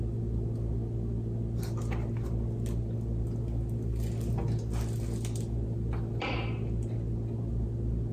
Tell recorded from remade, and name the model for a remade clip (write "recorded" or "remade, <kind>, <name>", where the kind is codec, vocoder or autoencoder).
recorded